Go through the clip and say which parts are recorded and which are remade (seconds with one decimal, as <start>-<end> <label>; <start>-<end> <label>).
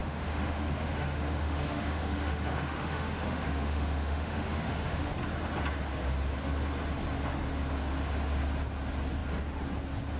0.0-5.1 remade; 5.1-10.2 recorded